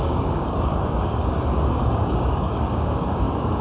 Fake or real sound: fake